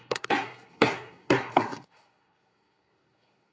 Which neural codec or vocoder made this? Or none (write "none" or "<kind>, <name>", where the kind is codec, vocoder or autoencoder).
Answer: codec, SNAC